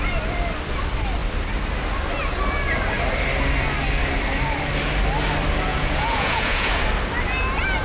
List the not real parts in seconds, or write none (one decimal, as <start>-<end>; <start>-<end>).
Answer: 5.7-6.8